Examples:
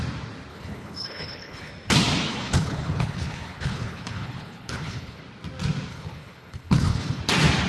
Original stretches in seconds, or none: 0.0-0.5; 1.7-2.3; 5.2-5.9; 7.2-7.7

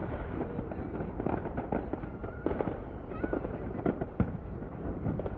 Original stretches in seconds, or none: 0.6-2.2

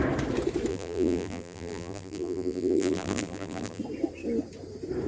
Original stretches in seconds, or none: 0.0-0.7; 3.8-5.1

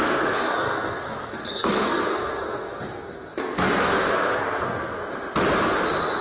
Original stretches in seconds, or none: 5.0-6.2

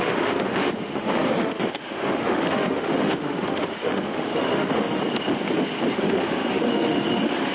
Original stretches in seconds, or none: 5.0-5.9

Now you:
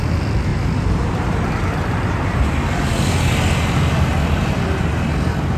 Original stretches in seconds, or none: 0.0-5.6

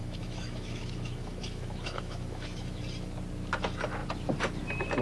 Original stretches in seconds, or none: 2.8-5.0

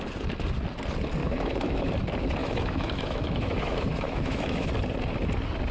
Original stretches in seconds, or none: 0.0-1.2; 1.9-2.4; 4.7-5.7